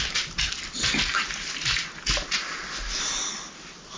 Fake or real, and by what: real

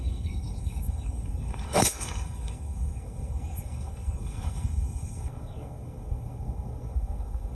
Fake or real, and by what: fake, codec, SNAC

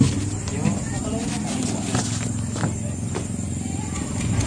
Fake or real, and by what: real